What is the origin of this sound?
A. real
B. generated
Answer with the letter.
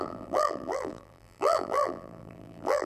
B